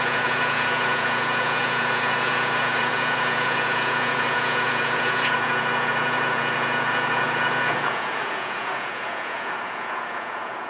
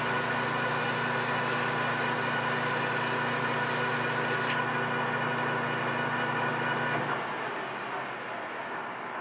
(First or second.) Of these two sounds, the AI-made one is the first